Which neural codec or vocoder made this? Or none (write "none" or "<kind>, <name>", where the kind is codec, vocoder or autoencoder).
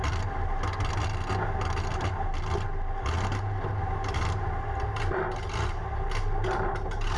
none